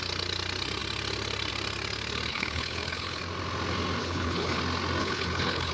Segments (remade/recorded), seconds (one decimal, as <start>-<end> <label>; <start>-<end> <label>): 0.0-2.3 recorded; 2.3-3.2 remade; 3.2-4.0 recorded; 4.0-4.6 remade; 4.6-5.0 recorded; 5.0-5.7 remade